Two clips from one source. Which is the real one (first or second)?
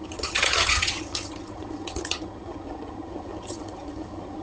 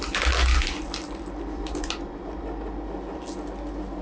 second